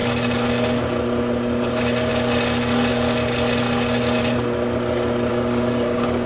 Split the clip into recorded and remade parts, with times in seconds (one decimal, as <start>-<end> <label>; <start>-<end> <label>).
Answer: 0.0-5.3 recorded; 5.3-6.3 remade